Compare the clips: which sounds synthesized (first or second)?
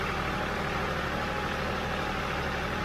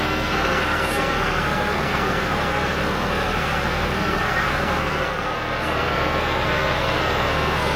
second